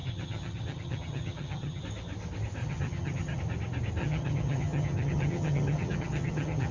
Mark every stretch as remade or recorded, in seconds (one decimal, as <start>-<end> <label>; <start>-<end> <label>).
0.0-1.8 remade; 1.8-2.6 recorded; 2.6-3.4 remade; 3.4-4.0 recorded; 4.0-6.7 remade

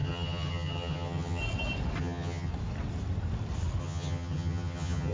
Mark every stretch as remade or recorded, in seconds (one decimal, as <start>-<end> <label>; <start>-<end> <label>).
0.0-1.4 remade; 1.4-2.0 recorded; 2.0-2.5 remade; 2.5-3.8 recorded; 3.8-5.1 remade

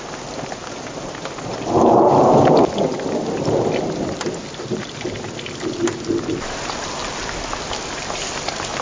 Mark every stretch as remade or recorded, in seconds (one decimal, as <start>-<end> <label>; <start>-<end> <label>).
0.0-8.8 recorded

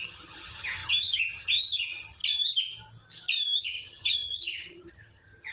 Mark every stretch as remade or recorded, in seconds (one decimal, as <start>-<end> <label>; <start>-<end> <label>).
0.0-2.2 remade; 2.2-3.6 recorded; 3.6-5.5 remade

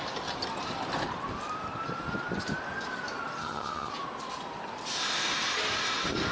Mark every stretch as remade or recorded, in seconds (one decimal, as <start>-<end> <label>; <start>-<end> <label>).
0.0-3.4 recorded; 3.4-3.9 remade; 3.9-6.3 recorded